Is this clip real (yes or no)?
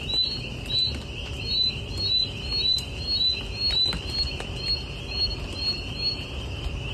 yes